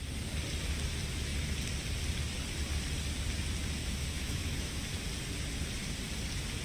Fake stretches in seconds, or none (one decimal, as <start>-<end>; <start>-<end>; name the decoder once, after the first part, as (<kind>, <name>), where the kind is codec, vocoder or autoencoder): 3.8-4.8 (autoencoder, DAC-VAE)